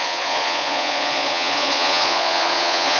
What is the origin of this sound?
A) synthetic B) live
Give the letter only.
A